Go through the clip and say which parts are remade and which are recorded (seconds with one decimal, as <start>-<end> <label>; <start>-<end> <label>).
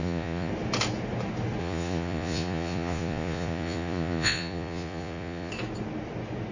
0.0-0.5 remade; 0.5-1.6 recorded; 1.6-5.5 remade; 5.5-6.5 recorded